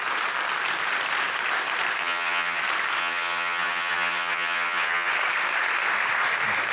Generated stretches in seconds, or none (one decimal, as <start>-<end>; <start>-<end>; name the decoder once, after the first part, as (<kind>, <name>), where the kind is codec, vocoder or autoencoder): 2.0-2.6 (vocoder, HiFi-GAN); 3.0-5.1